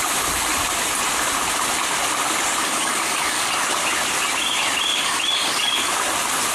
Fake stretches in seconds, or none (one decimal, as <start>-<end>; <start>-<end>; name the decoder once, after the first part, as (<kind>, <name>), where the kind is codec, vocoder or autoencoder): 2.6-3.5 (codec, DAC); 4.9-5.9